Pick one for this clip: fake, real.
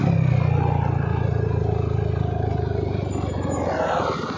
real